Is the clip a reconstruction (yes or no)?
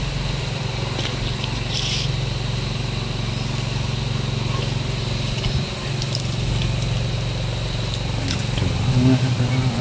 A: no